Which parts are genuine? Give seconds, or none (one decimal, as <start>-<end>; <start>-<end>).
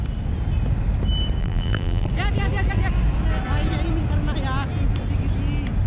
0.0-1.4; 2.1-5.9